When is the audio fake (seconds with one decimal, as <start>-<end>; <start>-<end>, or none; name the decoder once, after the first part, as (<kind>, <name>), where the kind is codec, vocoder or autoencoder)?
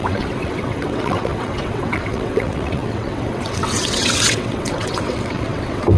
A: 0.0-6.0 (vocoder, WaveNeXt)